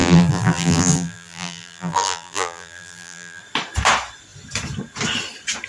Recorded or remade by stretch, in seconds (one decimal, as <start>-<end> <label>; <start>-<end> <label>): 0.0-3.4 remade; 3.4-5.7 recorded